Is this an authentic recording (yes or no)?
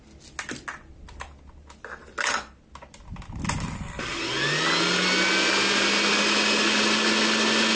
yes